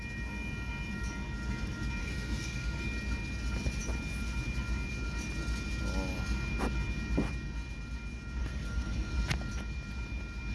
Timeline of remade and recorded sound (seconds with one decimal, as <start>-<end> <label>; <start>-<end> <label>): 0.0-2.0 recorded; 2.0-2.8 remade; 2.8-8.4 recorded; 8.4-9.1 remade; 9.1-10.5 recorded